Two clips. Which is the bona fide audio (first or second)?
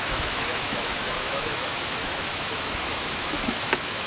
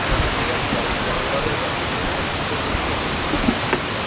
second